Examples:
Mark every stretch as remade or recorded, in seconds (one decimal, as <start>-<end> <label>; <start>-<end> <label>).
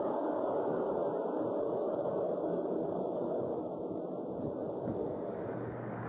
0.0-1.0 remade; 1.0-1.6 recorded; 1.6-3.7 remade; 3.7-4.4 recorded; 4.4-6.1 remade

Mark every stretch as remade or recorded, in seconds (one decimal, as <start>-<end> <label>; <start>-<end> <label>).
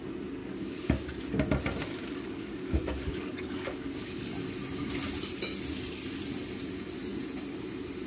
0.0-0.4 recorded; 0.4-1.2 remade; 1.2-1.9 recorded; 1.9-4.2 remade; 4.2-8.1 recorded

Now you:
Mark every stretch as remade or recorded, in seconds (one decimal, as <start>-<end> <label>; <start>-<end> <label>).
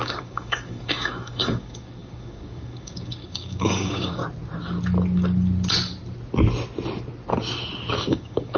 0.0-4.2 remade; 4.2-8.0 recorded; 8.0-8.6 remade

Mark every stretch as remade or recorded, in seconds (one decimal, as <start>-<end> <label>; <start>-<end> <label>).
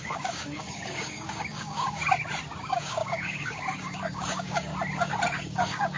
0.0-2.0 remade; 2.0-2.6 recorded; 2.6-4.7 remade; 4.7-5.4 recorded; 5.4-6.0 remade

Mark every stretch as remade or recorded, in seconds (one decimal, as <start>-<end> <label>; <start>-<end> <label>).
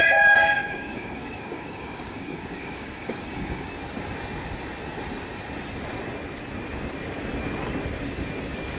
0.0-3.7 remade; 3.7-8.8 recorded